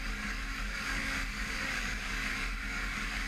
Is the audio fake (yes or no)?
yes